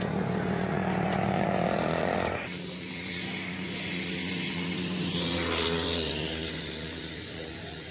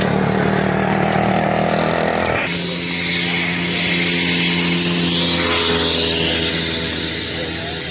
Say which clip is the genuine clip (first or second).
second